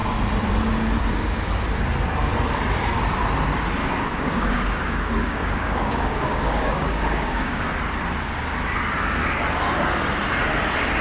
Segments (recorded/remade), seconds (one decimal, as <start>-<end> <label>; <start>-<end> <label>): 0.0-3.8 recorded; 3.8-7.7 remade; 7.7-11.0 recorded